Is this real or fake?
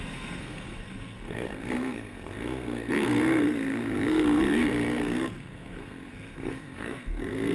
fake